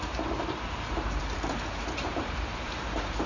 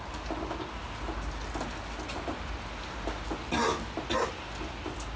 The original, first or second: second